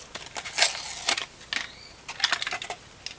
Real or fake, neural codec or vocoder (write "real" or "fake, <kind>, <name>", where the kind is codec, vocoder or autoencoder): real